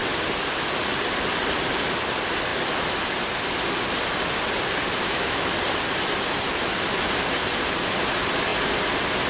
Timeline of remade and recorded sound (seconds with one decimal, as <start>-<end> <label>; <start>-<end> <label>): 0.0-5.0 recorded; 5.0-5.5 remade; 5.5-9.3 recorded